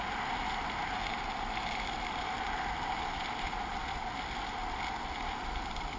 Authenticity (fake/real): real